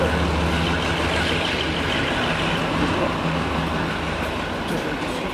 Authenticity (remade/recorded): recorded